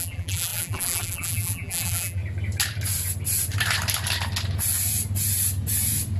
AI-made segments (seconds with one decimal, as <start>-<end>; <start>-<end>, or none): 0.0-2.2